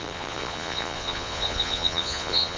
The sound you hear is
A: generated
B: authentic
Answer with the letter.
A